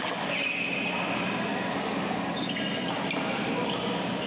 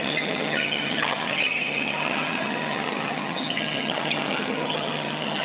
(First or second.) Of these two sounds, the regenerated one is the second